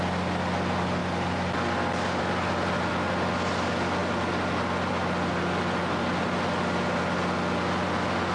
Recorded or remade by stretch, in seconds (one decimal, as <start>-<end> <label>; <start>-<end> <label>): 0.0-8.3 recorded